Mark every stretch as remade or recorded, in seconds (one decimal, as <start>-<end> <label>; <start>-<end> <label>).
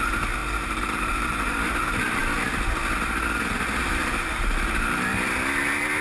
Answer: 0.0-0.4 recorded; 0.4-1.7 remade; 1.7-3.8 recorded; 3.8-5.1 remade; 5.1-6.0 recorded